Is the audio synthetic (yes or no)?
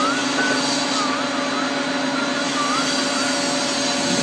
no